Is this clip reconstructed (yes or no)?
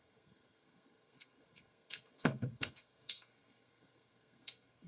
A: yes